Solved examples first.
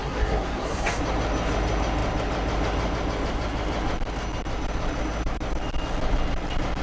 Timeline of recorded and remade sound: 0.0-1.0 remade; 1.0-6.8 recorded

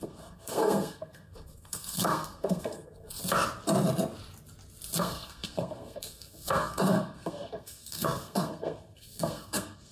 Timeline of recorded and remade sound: 0.0-3.2 remade; 3.2-5.0 recorded; 5.0-9.9 remade